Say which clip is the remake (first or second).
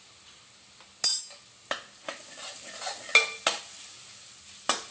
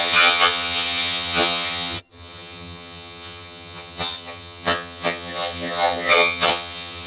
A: second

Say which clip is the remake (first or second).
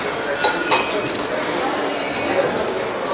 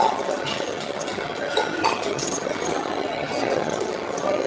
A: second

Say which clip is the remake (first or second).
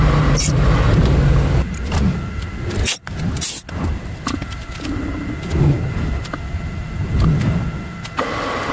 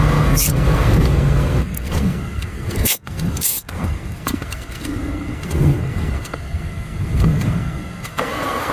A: second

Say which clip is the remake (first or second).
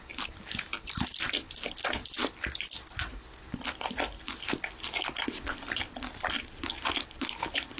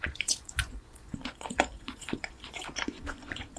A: second